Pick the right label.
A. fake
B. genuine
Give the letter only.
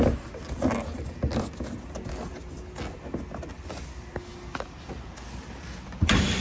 B